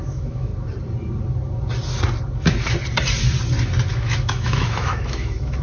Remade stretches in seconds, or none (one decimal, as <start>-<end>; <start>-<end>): 0.0-0.5; 3.9-5.6